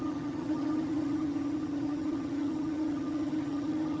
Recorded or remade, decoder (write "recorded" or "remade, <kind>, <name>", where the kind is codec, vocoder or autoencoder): remade, vocoder, HiFi-GAN